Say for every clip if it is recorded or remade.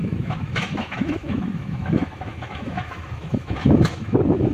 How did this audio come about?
remade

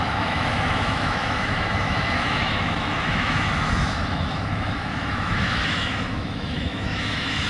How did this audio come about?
remade